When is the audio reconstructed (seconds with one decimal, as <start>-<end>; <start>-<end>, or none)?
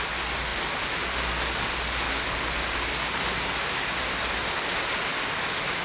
none